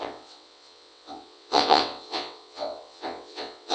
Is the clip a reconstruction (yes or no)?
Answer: yes